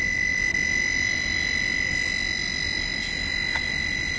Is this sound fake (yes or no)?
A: no